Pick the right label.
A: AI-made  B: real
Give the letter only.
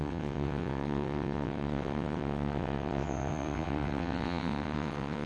A